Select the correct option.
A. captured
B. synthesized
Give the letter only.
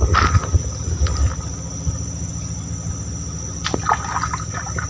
A